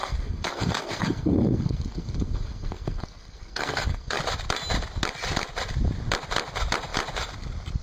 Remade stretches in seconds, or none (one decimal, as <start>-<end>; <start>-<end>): 0.0-4.2